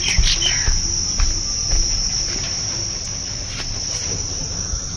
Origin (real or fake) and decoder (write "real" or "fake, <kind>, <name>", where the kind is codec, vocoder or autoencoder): real